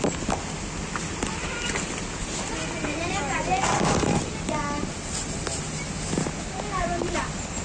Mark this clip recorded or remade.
recorded